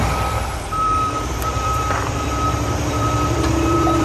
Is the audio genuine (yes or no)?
no